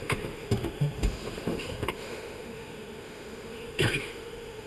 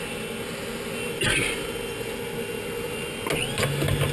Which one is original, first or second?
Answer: second